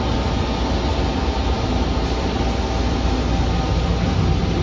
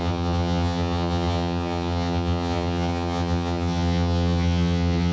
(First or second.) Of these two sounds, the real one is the first